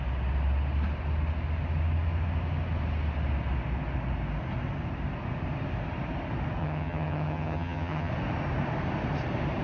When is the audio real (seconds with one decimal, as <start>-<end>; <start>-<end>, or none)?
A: 0.0-6.6; 8.1-9.6